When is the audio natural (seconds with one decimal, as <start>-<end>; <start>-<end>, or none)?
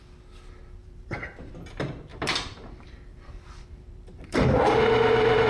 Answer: 0.0-0.8; 1.5-2.1; 4.6-5.5